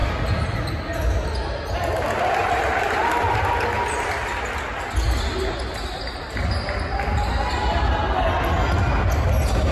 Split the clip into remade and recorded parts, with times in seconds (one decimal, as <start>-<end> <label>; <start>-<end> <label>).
0.0-9.7 recorded